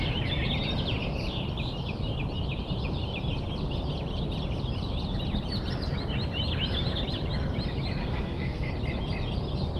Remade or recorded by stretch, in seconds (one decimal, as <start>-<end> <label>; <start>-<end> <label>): 0.0-8.0 recorded; 8.0-8.7 remade; 8.7-9.8 recorded

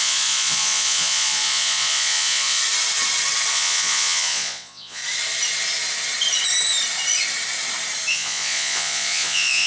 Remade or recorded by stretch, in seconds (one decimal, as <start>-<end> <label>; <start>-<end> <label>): 0.0-2.6 remade; 2.6-3.5 recorded; 3.5-5.0 remade; 5.0-8.1 recorded; 8.1-9.7 remade